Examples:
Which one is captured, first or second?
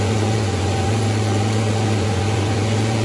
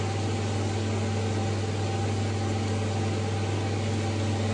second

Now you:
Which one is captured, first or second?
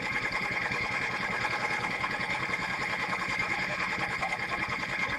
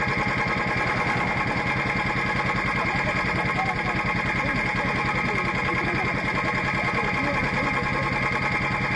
second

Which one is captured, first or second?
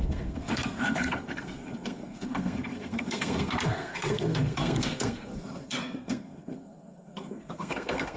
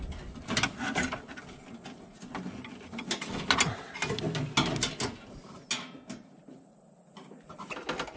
second